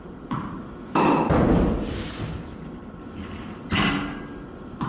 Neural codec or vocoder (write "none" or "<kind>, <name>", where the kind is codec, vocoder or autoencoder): none